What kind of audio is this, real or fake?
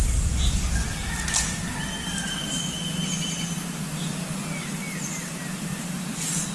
real